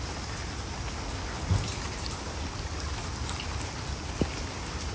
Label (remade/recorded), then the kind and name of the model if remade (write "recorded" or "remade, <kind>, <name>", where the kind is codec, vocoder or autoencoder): recorded